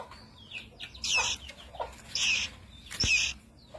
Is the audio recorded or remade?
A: recorded